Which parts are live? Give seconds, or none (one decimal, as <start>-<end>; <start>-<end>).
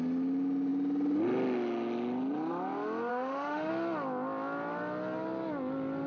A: 0.0-3.1; 3.7-6.1